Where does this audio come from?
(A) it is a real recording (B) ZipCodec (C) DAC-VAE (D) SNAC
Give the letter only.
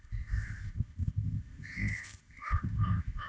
B